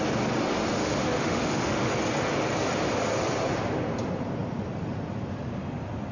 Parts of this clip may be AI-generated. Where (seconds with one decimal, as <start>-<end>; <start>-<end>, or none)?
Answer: 0.8-1.9